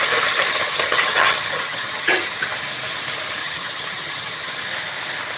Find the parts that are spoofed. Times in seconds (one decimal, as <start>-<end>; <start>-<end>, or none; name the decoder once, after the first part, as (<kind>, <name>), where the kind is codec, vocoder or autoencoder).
0.0-2.5 (vocoder, HiFi-GAN); 3.4-4.6